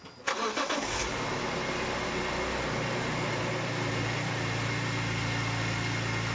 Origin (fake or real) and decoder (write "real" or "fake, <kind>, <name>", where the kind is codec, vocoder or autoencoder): real